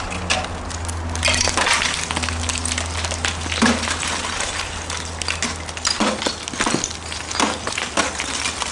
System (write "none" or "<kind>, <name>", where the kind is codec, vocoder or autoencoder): none